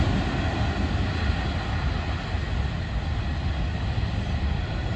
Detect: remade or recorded recorded